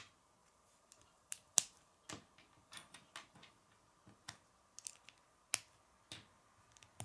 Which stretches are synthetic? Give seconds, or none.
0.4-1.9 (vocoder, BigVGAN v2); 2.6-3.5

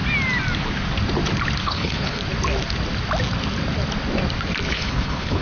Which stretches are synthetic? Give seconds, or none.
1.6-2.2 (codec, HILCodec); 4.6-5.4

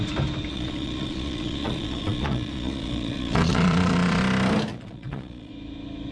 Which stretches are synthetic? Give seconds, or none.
0.5-4.2 (vocoder, Vocos); 4.7-5.5

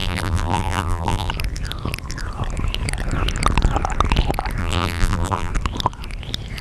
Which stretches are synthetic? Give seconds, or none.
0.0-1.3 (vocoder, BigVGAN v2); 4.6-5.5

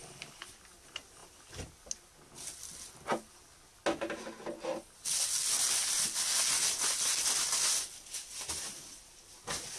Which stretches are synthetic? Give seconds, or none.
1.2-1.8 (vocoder, BigVGAN v2)

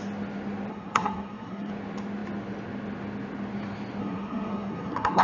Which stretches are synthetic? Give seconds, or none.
0.7-1.7 (codec, SNAC); 4.0-5.2